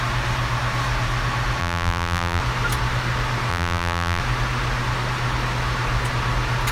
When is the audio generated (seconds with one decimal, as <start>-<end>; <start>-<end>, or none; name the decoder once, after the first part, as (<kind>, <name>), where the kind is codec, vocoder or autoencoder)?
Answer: 1.6-2.4 (vocoder, BigVGAN v2); 3.5-4.2